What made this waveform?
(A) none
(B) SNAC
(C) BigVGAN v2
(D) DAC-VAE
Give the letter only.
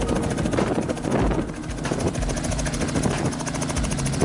A